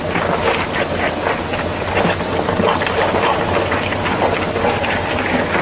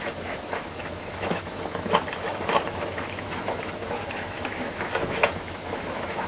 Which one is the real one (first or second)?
first